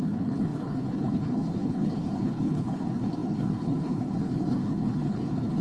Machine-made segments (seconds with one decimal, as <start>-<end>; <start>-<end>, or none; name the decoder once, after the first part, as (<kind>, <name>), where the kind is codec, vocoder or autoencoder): 0.0-5.6 (codec, HILCodec)